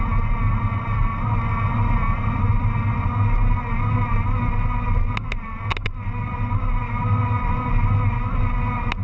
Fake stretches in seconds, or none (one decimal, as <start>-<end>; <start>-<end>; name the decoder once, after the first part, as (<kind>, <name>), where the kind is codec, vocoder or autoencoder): none